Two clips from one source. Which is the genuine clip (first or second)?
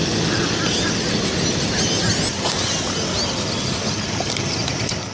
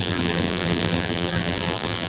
first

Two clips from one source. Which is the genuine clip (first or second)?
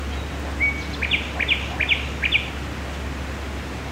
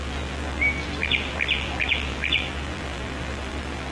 first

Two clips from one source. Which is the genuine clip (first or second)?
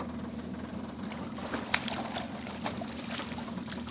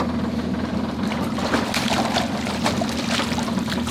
second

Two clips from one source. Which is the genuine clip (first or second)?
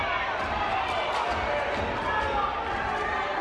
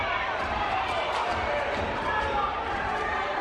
first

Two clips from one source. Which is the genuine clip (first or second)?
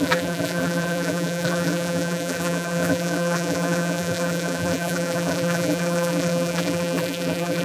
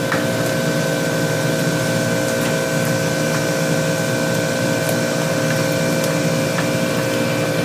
second